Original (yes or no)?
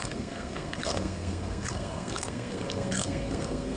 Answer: no